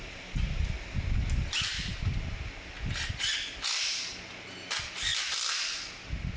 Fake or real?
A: real